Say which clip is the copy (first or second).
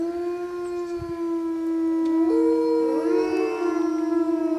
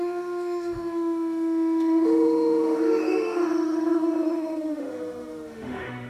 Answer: second